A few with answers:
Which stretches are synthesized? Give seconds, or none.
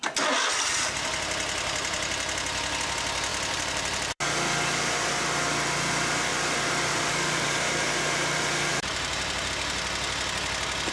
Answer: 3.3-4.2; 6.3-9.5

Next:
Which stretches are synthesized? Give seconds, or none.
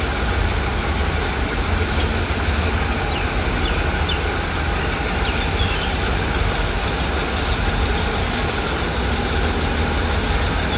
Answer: 8.2-8.8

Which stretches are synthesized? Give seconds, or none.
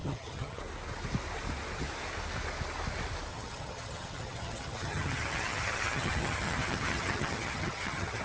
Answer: 0.0-0.6; 3.3-8.2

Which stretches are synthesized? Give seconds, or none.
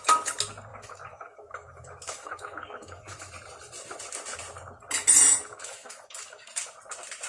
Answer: 0.7-3.3; 5.5-6.6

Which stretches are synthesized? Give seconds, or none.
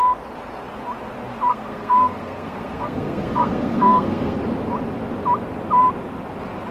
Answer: 1.5-4.4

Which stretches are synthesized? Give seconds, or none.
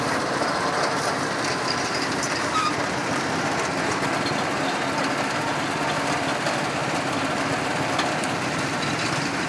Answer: 0.0-3.7; 5.9-6.8; 7.4-9.5